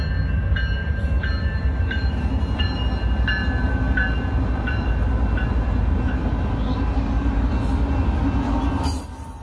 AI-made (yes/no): no